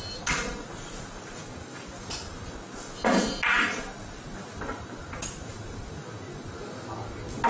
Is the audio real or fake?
real